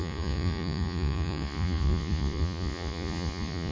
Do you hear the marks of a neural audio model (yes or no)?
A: yes